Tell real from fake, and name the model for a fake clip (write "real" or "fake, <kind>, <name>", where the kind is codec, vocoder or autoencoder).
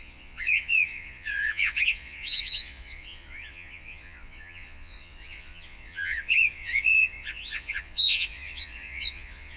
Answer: fake, vocoder, Vocos